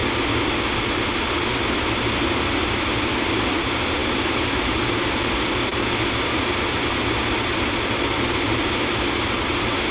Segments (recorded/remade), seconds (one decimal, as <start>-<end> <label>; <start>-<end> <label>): 0.0-9.9 recorded